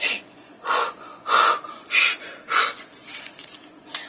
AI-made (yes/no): yes